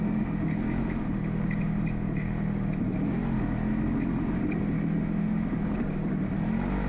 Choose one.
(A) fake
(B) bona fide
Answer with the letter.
B